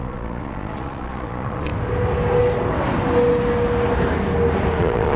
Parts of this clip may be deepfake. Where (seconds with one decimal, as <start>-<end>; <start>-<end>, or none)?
0.0-1.7; 4.8-5.2